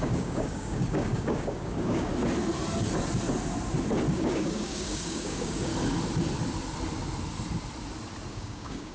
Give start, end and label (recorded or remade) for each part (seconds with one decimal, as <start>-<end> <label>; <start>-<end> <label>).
0.0-2.1 remade; 2.1-4.1 recorded; 4.1-5.7 remade; 5.7-8.3 recorded; 8.3-8.9 remade